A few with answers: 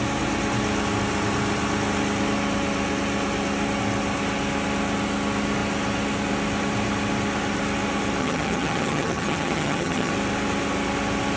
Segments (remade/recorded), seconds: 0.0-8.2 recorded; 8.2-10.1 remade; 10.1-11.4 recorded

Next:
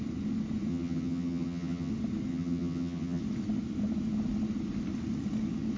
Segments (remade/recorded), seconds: 0.0-0.7 recorded; 0.7-1.9 remade; 1.9-2.3 recorded; 2.3-3.2 remade; 3.2-5.8 recorded

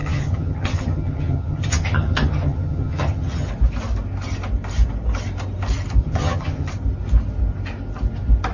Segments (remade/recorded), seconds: 0.0-3.5 remade; 3.5-6.0 recorded; 6.0-6.7 remade; 6.7-8.5 recorded

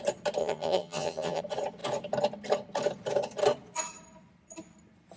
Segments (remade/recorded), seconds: 0.0-0.4 recorded; 0.4-1.4 remade; 1.4-5.2 recorded

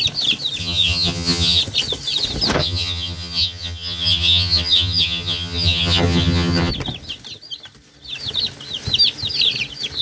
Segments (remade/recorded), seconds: 0.0-0.6 recorded; 0.6-1.6 remade; 1.6-2.6 recorded; 2.6-6.7 remade; 6.7-10.0 recorded

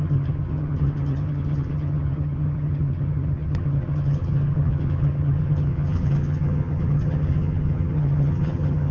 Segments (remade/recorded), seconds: 0.0-8.9 remade